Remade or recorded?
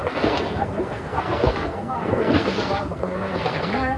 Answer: remade